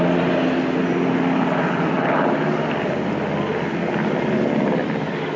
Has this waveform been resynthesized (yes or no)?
no